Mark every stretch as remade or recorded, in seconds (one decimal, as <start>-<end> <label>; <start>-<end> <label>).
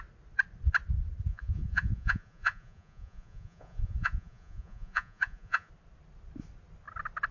0.0-1.3 recorded; 1.3-5.7 remade; 5.7-7.3 recorded